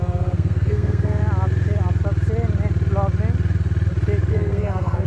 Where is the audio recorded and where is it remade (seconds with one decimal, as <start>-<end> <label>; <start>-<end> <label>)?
0.0-1.2 remade; 1.2-4.3 recorded; 4.3-5.1 remade